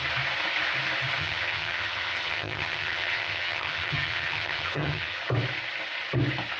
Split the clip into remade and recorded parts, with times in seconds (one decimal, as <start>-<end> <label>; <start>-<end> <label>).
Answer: 0.0-1.2 recorded; 1.2-5.2 remade; 5.2-6.6 recorded